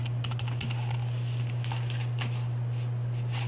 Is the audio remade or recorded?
recorded